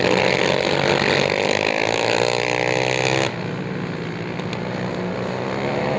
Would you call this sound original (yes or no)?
yes